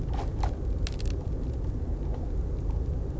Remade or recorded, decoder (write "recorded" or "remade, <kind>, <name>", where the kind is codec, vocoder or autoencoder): recorded